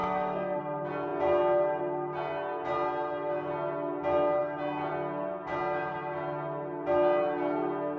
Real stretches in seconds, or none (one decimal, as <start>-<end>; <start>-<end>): 0.6-8.0